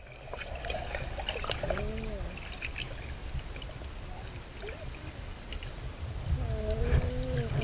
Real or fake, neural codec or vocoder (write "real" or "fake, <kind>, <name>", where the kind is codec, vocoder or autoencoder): real